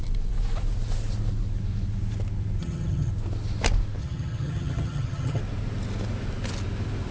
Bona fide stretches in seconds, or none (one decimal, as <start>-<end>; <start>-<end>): 0.0-2.6; 3.1-4.0; 5.4-7.1